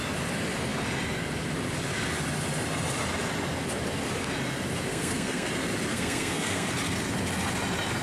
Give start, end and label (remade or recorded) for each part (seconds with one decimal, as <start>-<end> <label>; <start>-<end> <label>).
0.0-4.9 recorded; 4.9-5.5 remade; 5.5-5.9 recorded; 5.9-6.7 remade; 6.7-8.0 recorded